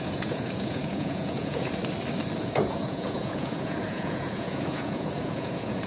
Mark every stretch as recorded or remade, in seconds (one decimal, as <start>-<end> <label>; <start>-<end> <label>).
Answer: 0.0-1.8 remade; 1.8-2.4 recorded; 2.4-5.9 remade